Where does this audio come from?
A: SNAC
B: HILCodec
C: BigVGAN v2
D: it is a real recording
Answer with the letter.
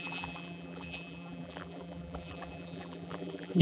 C